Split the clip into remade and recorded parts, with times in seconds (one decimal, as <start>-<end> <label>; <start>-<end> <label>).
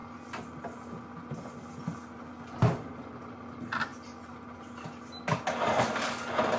0.0-6.6 recorded